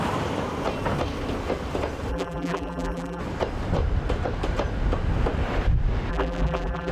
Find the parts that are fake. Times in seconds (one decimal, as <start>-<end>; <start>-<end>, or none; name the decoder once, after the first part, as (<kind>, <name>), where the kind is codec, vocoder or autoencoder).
2.1-3.2 (vocoder, BigVGAN v2); 6.1-6.9